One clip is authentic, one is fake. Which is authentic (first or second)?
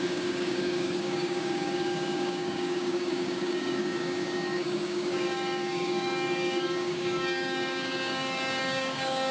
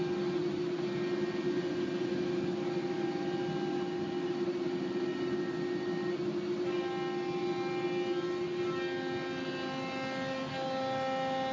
second